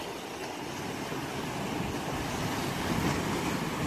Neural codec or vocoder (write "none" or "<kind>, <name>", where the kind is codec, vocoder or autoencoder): none